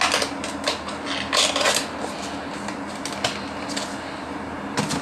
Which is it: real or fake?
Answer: real